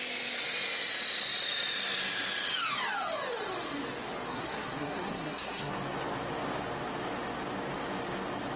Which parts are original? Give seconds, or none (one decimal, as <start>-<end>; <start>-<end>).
0.0-4.3; 5.7-8.6